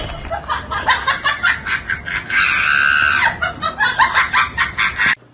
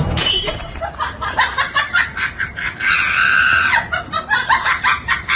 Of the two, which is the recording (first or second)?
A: first